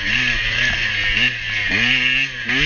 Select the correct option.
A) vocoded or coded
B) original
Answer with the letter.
B